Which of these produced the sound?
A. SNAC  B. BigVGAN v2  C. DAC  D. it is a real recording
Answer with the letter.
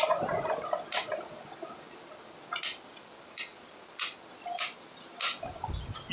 D